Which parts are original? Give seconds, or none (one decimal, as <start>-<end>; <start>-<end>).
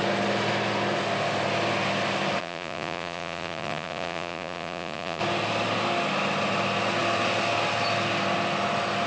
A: 0.0-2.4; 5.2-9.1